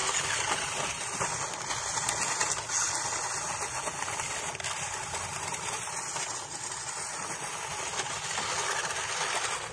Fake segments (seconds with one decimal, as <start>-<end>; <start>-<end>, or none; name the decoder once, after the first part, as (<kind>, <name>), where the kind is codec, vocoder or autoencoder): none